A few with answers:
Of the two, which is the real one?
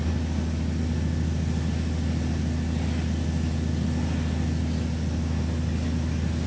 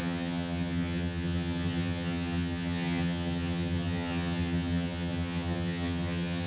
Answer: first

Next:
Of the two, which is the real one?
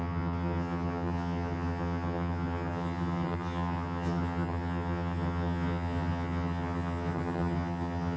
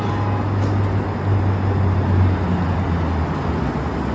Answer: second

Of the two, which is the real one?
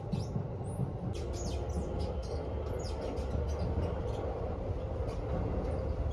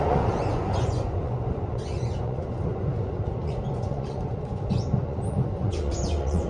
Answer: first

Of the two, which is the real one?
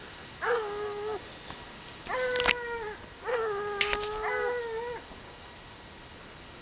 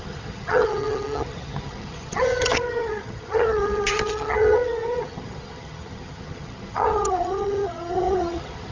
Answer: first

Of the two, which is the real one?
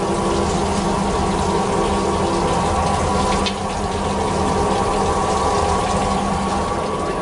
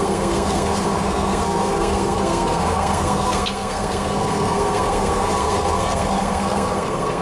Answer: first